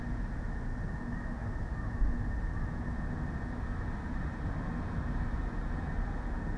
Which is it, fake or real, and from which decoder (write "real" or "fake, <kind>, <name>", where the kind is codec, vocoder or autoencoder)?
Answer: real